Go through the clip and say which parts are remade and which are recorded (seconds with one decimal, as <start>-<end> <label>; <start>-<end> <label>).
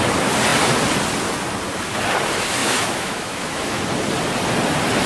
0.0-2.6 recorded; 2.6-3.8 remade; 3.8-5.1 recorded